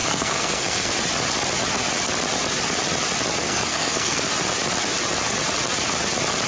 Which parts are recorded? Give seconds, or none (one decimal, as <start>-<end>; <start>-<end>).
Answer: 0.9-3.4; 4.2-6.5